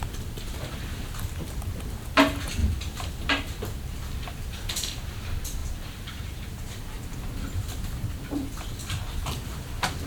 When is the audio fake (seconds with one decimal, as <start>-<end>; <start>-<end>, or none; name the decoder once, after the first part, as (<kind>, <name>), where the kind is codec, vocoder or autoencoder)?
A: 3.9-5.0 (vocoder, BigVGAN v2); 5.6-9.5